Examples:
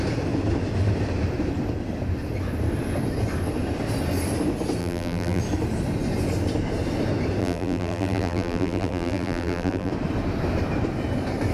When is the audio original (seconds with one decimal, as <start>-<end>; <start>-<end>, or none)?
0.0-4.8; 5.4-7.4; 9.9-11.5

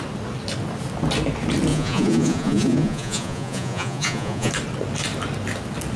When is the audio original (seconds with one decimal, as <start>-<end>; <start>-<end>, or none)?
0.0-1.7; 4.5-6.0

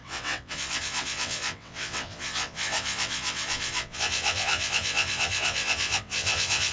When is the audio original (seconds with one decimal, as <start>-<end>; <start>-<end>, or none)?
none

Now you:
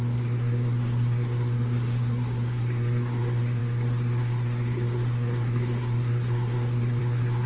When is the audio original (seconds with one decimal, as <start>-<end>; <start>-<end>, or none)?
none

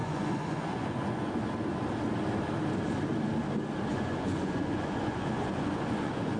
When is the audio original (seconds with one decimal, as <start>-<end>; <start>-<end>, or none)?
1.3-3.9

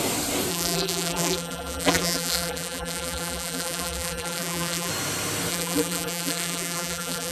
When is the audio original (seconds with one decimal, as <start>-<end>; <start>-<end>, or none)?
0.0-0.5; 4.9-5.5

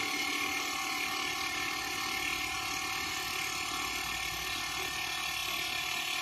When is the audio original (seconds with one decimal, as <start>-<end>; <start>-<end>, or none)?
0.0-6.2

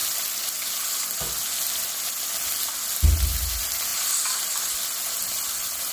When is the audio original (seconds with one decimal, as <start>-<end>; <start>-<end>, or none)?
0.0-5.9